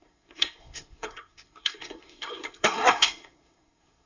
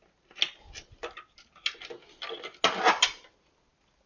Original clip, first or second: second